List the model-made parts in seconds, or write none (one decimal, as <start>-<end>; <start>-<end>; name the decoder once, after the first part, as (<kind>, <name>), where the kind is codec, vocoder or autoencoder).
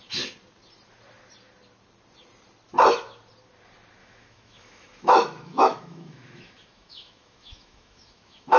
4.0-8.6 (autoencoder, DAC-VAE)